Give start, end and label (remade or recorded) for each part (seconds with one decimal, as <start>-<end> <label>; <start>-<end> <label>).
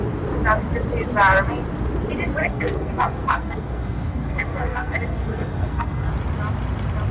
0.0-2.4 recorded; 2.4-6.1 remade; 6.1-7.1 recorded